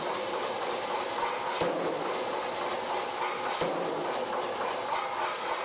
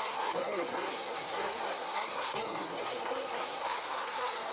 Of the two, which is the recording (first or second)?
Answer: first